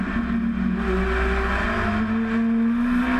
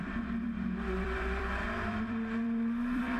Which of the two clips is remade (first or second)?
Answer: second